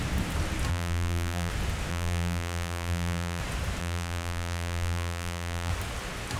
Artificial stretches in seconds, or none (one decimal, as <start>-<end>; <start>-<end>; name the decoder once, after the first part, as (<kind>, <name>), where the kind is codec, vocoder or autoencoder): 0.7-1.5 (vocoder, BigVGAN v2); 1.9-3.4; 3.8-5.7

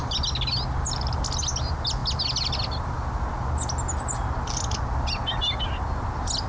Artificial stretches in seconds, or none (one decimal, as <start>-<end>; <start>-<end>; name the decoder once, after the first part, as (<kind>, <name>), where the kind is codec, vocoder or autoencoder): none